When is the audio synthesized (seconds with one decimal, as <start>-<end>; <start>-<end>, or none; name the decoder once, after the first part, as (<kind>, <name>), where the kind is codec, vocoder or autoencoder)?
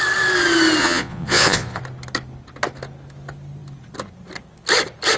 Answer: 0.8-1.8 (vocoder, Vocos)